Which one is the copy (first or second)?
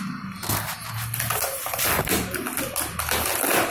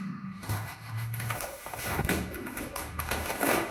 second